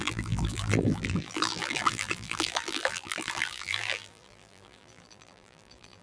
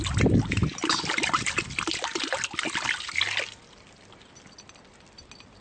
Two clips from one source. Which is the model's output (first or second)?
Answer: first